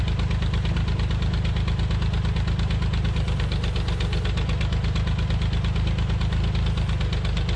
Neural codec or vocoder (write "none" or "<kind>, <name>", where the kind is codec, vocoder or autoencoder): none